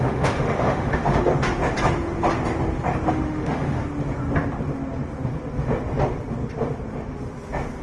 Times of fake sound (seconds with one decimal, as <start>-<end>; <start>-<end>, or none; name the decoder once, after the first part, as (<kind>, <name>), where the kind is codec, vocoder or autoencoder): 0.0-1.3 (autoencoder, DAC-VAE); 3.1-3.8